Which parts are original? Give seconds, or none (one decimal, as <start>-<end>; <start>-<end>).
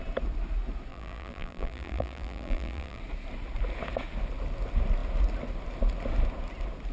0.0-0.9; 3.0-6.9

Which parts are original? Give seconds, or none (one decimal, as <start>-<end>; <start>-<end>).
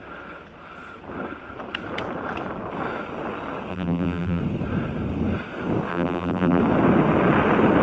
0.0-3.7; 4.4-5.9; 6.6-7.8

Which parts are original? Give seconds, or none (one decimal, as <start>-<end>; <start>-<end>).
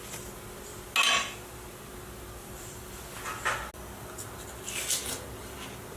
0.0-2.4; 3.7-6.0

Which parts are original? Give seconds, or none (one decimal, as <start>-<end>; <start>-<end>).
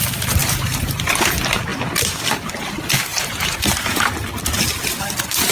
0.0-0.4; 1.1-3.1; 4.0-5.5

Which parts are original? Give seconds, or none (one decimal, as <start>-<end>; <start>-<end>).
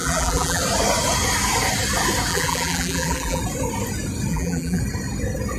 0.6-2.3; 3.4-4.3; 4.8-5.6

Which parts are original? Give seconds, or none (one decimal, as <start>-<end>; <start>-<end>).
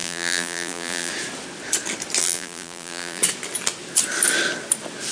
1.1-2.2; 3.2-5.1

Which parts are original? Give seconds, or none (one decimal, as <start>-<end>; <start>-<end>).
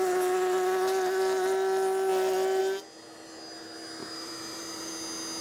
0.0-4.0; 4.9-5.4